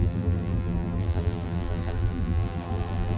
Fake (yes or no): yes